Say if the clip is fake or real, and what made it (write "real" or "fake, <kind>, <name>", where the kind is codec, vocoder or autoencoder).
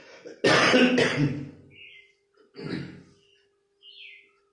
real